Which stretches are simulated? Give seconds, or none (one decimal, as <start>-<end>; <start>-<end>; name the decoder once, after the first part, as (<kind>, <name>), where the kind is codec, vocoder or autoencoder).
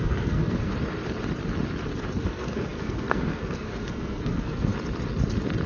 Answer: 0.0-0.7 (codec, SNAC); 2.2-4.7